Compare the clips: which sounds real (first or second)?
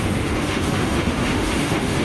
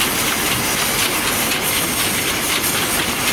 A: second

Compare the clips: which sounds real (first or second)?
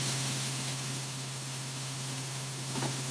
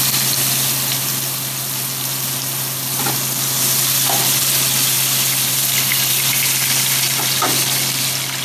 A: second